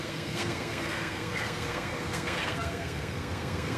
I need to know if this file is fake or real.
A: fake